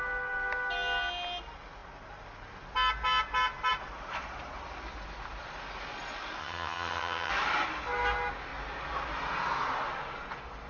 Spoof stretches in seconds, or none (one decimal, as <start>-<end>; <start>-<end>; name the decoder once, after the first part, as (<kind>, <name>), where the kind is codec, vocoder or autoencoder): 6.4-7.3 (vocoder, HiFi-GAN)